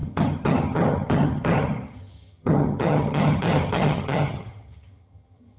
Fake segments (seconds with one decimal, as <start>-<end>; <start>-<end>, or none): 0.0-5.6